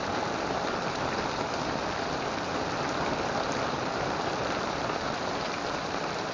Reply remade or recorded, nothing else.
recorded